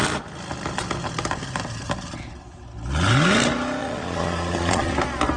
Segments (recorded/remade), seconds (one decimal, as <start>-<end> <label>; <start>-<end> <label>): 0.0-3.8 recorded; 3.8-4.9 remade; 4.9-5.4 recorded